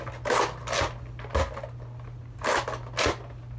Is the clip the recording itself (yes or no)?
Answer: yes